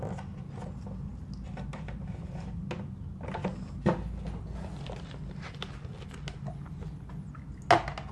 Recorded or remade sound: recorded